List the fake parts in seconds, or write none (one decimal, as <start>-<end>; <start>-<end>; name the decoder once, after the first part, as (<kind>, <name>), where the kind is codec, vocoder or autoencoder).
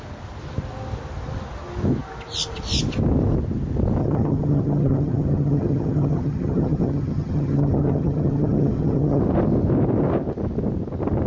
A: 4.0-9.2 (vocoder, HiFi-GAN)